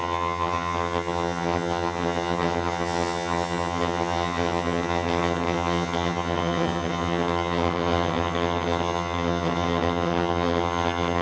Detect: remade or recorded remade